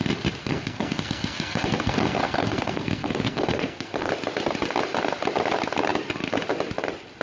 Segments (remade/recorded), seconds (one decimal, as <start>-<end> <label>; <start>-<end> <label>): 0.0-0.4 recorded; 0.4-4.1 remade; 4.1-7.2 recorded